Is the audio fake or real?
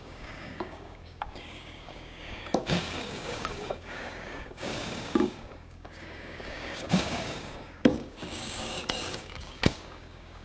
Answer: fake